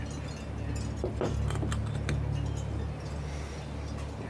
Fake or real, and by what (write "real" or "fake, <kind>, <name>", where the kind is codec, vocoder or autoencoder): real